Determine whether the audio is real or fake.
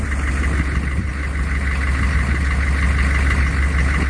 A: real